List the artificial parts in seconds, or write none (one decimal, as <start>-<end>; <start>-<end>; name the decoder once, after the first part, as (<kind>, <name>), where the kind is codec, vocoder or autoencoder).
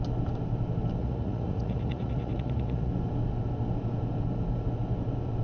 1.0-2.9 (vocoder, Vocos)